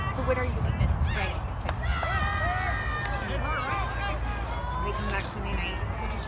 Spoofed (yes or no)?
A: no